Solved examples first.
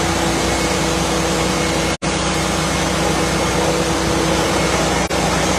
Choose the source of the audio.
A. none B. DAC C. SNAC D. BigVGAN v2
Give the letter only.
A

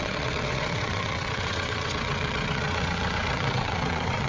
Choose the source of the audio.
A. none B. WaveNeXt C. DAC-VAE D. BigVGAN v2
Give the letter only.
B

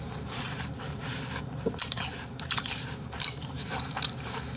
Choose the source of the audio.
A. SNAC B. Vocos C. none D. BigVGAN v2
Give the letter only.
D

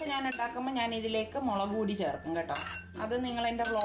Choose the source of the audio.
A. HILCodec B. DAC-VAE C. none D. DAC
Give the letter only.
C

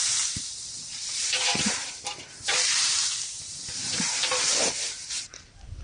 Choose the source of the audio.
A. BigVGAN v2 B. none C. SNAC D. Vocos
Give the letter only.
A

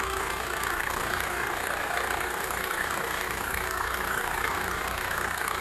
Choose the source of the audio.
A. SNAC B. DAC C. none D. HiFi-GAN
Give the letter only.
B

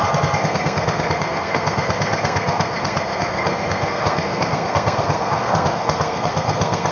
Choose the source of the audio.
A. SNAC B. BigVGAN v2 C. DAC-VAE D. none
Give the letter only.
A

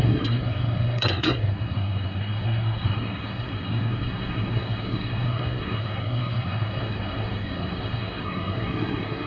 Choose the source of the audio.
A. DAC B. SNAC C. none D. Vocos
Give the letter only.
B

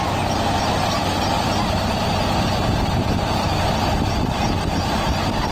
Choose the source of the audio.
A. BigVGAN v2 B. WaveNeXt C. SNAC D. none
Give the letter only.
D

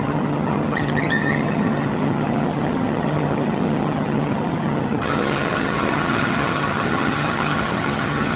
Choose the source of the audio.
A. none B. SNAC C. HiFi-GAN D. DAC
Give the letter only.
C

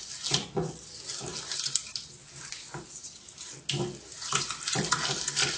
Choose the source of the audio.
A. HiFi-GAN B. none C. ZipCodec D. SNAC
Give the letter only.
B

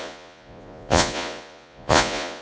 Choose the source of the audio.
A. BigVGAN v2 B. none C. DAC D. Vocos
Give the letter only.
D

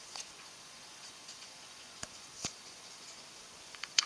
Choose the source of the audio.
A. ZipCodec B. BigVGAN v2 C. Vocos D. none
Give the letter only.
C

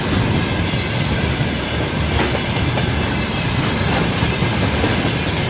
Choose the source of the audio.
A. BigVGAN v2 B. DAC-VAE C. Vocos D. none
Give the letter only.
D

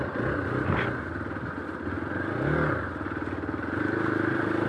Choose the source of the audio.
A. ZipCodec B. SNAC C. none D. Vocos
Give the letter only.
C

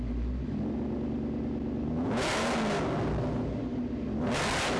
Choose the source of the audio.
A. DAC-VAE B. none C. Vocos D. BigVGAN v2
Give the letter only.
B